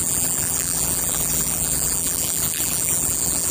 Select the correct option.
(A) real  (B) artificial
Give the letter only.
B